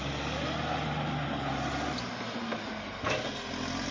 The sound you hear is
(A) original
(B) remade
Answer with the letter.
A